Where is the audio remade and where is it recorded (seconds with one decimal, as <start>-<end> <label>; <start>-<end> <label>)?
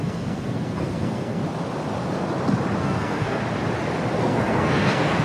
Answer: 0.0-1.4 remade; 1.4-2.8 recorded; 2.8-3.4 remade; 3.4-4.2 recorded; 4.2-5.2 remade